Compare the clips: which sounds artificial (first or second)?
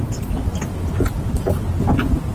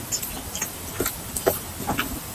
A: second